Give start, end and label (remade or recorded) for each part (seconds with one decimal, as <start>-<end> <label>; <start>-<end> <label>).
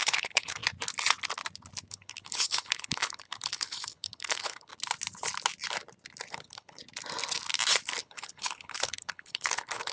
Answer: 0.0-0.6 remade; 0.6-1.9 recorded; 1.9-4.7 remade; 4.7-6.3 recorded; 6.3-6.8 remade; 6.8-8.0 recorded; 8.0-9.9 remade